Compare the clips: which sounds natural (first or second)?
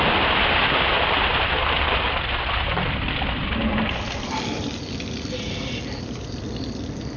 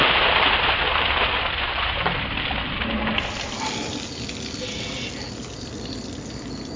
second